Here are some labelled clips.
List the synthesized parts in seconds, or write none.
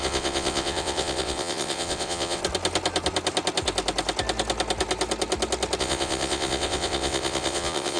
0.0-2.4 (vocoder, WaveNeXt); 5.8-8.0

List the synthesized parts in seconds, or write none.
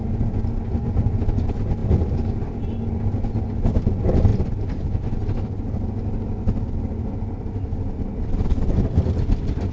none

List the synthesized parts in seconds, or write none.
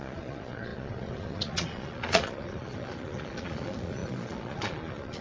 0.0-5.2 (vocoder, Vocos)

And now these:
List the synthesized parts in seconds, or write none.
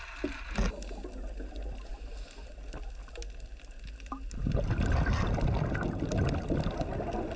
none